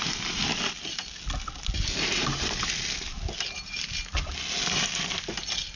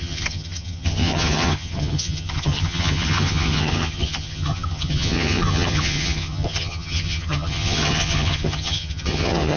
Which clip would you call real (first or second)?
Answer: first